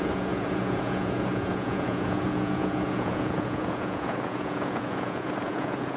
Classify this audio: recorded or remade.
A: remade